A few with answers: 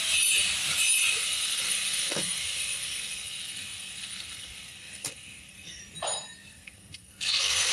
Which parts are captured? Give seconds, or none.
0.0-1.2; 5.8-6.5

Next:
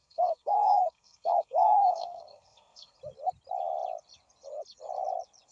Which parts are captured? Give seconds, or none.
3.0-5.5

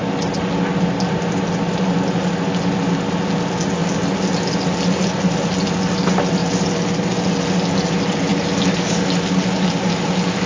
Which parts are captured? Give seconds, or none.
0.0-10.5

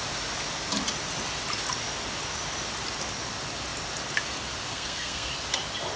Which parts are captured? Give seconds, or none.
0.0-4.7; 5.3-6.0

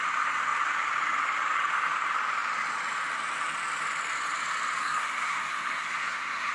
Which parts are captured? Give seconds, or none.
0.0-4.8

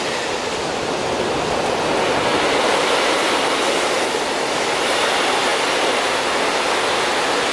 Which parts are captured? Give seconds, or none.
0.0-7.5

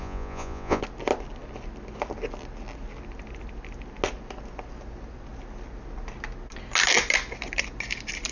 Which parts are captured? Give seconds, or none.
0.8-8.3

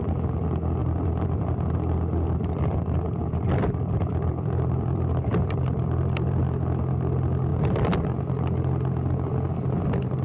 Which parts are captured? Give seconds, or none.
0.0-0.8; 2.6-3.2; 6.4-7.5; 8.2-10.2